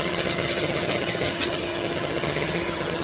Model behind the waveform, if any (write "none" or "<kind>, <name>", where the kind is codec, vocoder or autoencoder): vocoder, HiFi-GAN